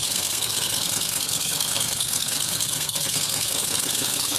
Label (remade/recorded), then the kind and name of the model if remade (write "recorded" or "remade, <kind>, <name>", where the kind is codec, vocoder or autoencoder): remade, codec, SNAC